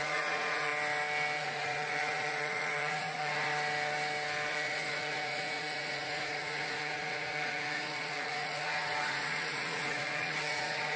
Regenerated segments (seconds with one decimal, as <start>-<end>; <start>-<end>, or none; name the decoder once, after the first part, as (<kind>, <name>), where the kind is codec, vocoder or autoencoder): 0.0-0.7 (vocoder, Vocos); 1.4-3.5; 4.5-11.0